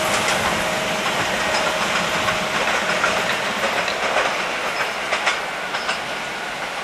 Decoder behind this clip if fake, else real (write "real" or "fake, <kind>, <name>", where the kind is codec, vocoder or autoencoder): real